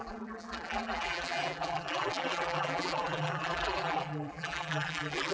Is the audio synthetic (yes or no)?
yes